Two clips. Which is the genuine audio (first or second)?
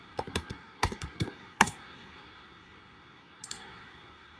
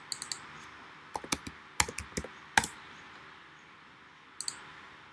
second